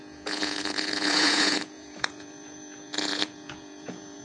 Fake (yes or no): yes